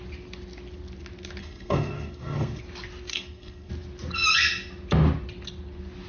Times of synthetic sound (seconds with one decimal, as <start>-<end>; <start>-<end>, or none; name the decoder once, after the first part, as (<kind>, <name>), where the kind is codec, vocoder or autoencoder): 1.4-2.6 (codec, SNAC); 3.1-3.7